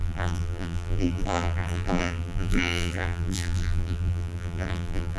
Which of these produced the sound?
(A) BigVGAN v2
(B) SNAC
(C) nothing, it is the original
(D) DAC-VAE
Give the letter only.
A